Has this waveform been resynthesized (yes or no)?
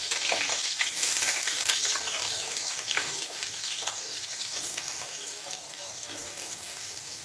yes